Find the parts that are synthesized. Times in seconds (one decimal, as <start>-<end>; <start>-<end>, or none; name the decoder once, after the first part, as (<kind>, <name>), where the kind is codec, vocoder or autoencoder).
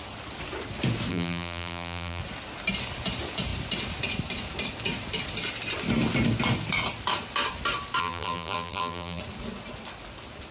1.1-2.2 (vocoder, BigVGAN v2); 8.0-9.2